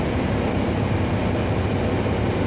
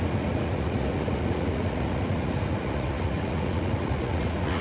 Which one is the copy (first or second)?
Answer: second